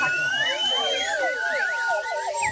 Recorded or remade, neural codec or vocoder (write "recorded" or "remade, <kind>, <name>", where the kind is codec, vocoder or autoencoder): remade, vocoder, BigVGAN v2